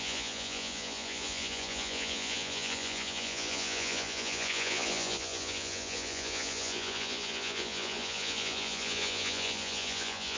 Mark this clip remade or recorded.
remade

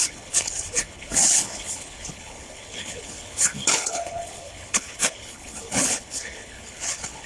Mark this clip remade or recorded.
remade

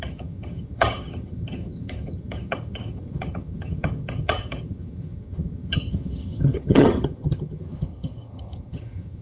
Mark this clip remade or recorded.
remade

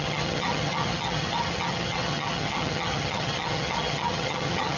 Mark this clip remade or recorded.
remade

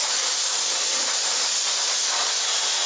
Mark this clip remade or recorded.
recorded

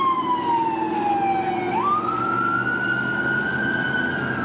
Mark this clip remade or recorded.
recorded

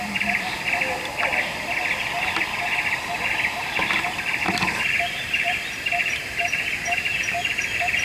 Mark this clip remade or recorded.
remade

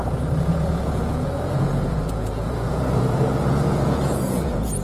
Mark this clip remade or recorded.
remade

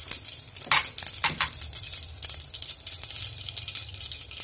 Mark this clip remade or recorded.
recorded